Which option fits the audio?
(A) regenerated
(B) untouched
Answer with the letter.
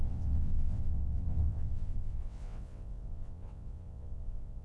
A